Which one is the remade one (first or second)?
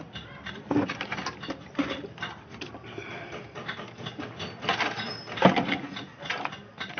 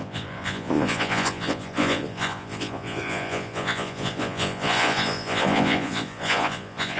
second